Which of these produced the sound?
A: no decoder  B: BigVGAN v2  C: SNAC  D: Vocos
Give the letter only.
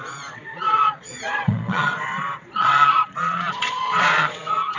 D